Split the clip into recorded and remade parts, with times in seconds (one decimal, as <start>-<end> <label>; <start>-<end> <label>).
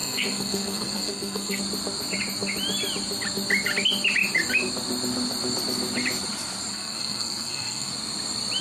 0.0-1.6 remade; 1.6-6.7 recorded; 6.7-7.9 remade; 7.9-8.6 recorded